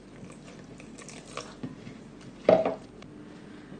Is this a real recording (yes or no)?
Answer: yes